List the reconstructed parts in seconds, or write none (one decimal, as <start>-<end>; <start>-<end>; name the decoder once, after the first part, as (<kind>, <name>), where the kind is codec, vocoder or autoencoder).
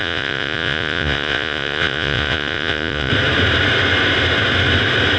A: 0.0-3.1 (vocoder, Vocos)